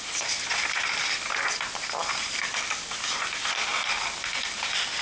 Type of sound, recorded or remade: recorded